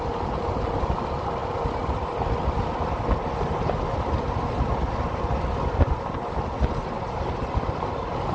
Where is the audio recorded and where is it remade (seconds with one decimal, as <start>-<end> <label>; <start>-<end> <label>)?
0.0-8.3 recorded